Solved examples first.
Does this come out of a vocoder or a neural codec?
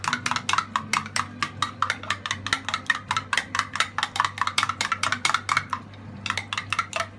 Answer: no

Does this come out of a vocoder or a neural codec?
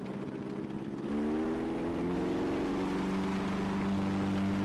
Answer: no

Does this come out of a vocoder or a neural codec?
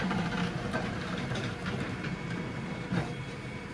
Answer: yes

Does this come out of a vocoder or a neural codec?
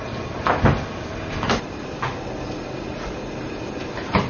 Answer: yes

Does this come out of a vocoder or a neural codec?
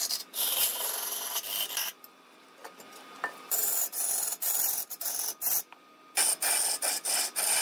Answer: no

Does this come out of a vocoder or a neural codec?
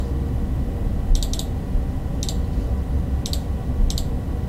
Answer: no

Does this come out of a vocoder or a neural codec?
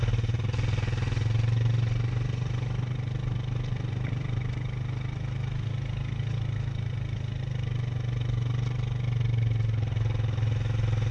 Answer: no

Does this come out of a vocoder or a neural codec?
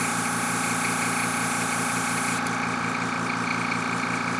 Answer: no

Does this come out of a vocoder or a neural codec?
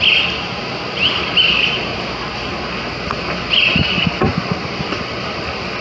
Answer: yes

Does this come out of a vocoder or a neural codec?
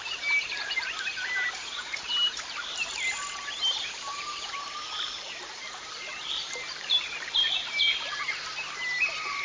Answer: yes